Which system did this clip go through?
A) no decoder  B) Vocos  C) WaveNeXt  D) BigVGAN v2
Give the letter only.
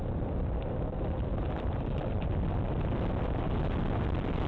A